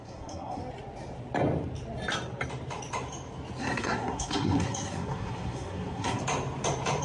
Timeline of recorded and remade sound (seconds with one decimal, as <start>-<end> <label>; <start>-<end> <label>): 0.0-0.6 remade; 0.6-3.6 recorded; 3.6-6.2 remade; 6.2-7.0 recorded